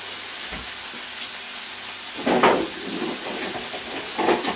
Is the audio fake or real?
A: real